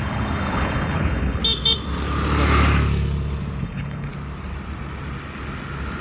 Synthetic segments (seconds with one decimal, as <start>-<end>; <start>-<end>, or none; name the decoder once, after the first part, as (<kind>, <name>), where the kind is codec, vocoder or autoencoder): 0.0-1.4 (codec, HILCodec); 3.6-4.1